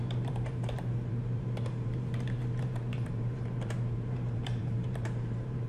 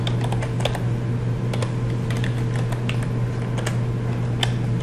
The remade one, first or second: first